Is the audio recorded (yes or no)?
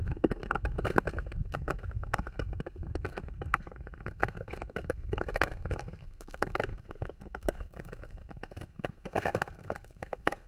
no